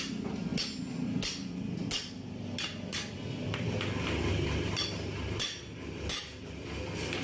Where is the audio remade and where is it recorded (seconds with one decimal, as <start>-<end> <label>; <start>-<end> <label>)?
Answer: 0.0-7.2 recorded